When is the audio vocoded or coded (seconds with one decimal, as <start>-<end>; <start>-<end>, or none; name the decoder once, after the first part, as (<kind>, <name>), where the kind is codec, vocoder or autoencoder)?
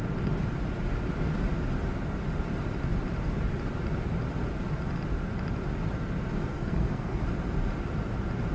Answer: 6.5-7.2 (codec, SNAC)